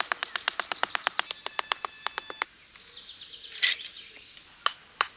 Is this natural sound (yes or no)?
yes